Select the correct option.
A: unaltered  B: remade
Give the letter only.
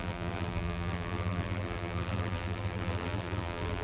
B